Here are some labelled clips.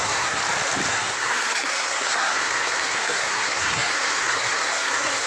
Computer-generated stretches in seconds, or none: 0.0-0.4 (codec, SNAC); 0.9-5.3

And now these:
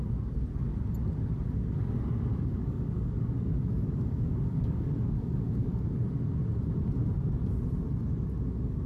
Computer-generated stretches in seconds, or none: 2.5-5.9 (codec, DAC)

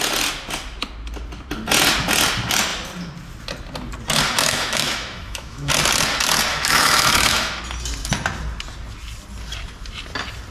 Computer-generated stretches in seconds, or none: 4.4-5.7 (autoencoder, DAC-VAE); 6.5-7.6